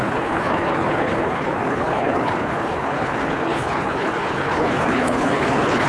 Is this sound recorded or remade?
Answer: remade